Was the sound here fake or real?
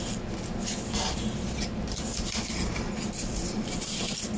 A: real